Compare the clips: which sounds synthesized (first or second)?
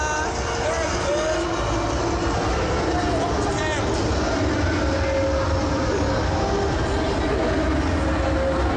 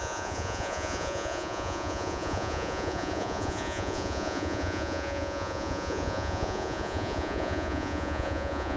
second